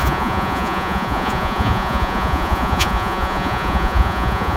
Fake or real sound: fake